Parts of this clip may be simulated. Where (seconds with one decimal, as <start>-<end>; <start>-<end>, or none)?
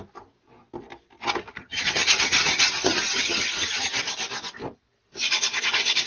1.5-3.9